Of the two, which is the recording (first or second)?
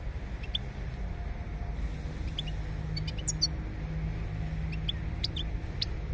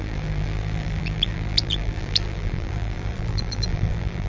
first